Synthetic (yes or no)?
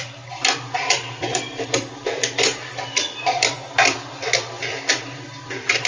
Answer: yes